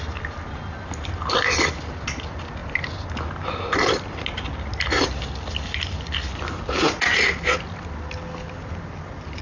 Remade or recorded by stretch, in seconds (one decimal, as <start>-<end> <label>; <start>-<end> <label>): 0.0-9.4 recorded